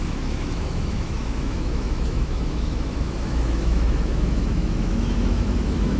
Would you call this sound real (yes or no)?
no